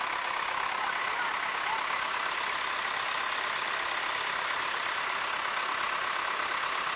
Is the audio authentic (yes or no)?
yes